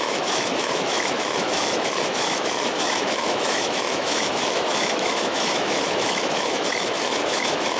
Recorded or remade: remade